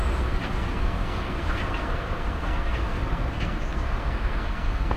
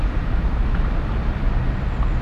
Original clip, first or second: second